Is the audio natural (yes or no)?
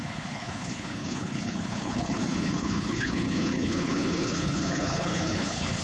no